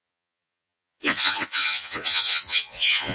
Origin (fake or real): fake